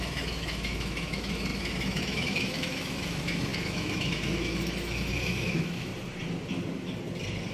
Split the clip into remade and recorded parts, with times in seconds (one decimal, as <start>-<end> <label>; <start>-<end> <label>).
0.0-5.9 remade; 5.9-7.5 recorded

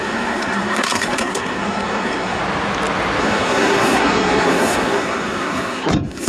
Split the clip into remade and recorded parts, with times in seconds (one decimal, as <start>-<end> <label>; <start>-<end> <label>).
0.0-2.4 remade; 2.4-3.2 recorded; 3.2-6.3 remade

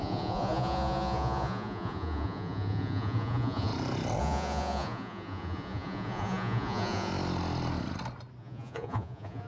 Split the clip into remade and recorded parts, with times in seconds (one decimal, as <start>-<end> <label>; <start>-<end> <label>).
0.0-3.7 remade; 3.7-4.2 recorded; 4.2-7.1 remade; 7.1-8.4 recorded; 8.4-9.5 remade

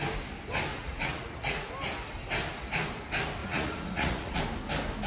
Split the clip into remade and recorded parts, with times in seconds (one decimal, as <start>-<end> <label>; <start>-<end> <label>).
0.0-0.7 recorded; 0.7-1.7 remade; 1.7-3.4 recorded; 3.4-4.4 remade; 4.4-5.1 recorded

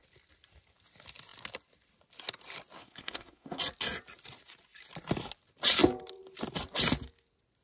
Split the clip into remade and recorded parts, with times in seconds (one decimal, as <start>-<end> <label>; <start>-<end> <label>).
0.0-2.8 recorded; 2.8-3.6 remade; 3.6-7.6 recorded

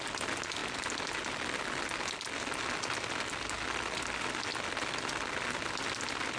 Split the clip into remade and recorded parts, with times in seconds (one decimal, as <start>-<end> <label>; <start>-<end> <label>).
0.0-6.4 recorded

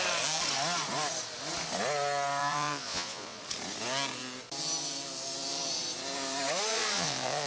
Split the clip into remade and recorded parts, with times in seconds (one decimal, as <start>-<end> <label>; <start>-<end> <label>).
0.0-2.4 recorded; 2.4-3.4 remade; 3.4-6.7 recorded; 6.7-7.5 remade